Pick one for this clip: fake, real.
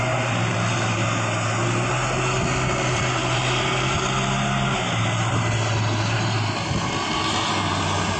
real